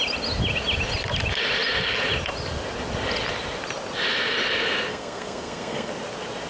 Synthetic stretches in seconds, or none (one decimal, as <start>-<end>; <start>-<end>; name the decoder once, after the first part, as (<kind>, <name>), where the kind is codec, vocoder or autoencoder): 4.9-5.9 (codec, SNAC)